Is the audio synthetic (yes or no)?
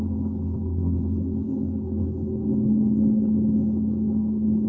yes